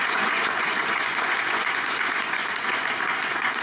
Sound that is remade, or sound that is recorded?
remade